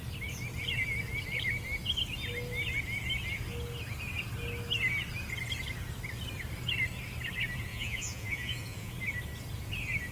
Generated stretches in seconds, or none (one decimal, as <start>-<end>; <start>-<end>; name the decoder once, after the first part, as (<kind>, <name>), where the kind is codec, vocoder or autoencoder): 7.7-8.9 (vocoder, Vocos)